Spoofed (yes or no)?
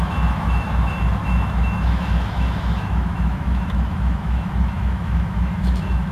yes